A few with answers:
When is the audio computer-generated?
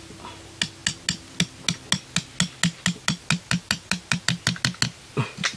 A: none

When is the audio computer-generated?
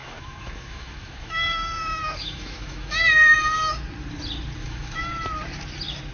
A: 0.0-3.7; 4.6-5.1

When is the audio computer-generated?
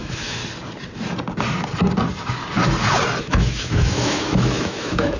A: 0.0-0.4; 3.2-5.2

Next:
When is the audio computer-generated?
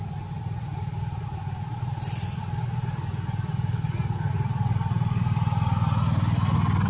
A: none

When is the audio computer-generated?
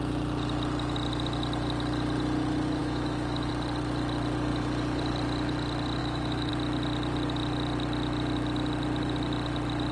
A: 2.8-3.5; 6.0-6.5